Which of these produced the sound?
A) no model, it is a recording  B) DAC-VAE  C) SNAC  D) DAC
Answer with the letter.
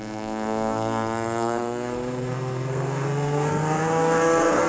C